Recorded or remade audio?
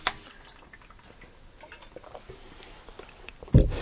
recorded